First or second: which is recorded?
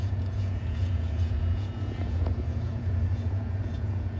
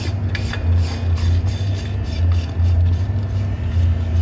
second